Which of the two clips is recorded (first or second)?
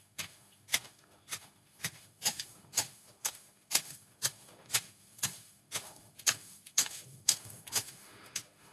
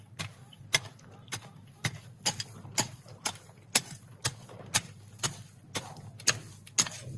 second